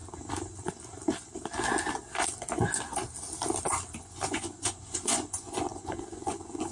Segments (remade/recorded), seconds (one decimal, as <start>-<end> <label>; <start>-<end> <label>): 0.0-4.0 recorded; 4.0-6.7 remade